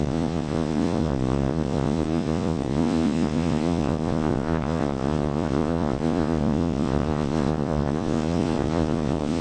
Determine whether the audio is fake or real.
fake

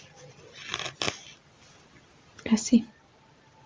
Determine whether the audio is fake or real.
real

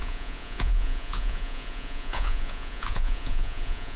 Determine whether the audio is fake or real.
fake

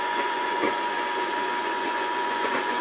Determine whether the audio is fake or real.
fake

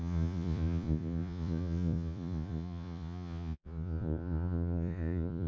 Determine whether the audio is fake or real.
fake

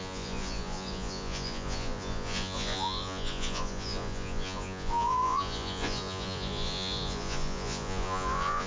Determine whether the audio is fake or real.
fake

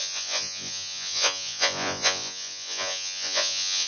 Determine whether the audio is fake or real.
fake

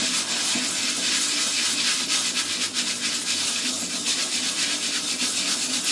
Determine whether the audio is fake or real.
real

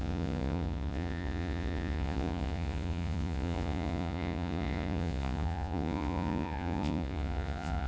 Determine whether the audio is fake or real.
fake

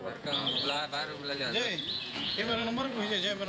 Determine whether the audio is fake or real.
fake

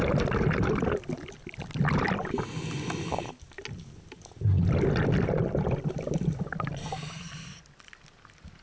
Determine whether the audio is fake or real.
real